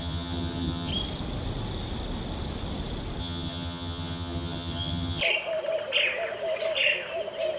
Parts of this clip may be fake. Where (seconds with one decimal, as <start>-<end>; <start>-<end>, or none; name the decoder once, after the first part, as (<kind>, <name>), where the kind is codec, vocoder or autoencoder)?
0.0-0.9 (vocoder, HiFi-GAN); 3.2-5.2